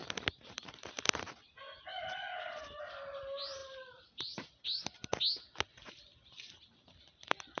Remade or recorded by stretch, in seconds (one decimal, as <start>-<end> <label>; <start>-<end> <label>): 0.0-2.6 recorded; 2.6-3.2 remade; 3.2-3.6 recorded; 3.6-5.1 remade; 5.1-7.6 recorded